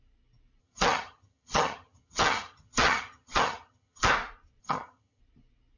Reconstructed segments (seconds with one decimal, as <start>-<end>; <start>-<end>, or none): 0.6-4.1; 4.6-5.2